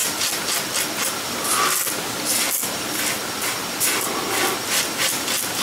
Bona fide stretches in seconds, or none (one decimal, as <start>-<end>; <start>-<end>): 0.0-5.6